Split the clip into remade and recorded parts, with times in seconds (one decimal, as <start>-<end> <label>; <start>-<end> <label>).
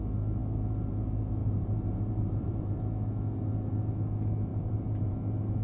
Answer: 0.0-1.4 recorded; 1.4-2.8 remade; 2.8-4.5 recorded; 4.5-5.1 remade; 5.1-5.6 recorded